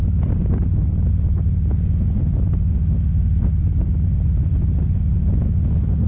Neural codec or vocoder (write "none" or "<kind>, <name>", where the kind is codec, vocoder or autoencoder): none